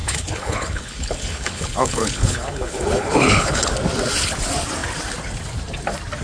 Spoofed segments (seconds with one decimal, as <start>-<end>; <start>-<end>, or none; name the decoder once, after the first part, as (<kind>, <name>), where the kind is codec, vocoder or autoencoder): 0.0-3.7 (codec, HILCodec)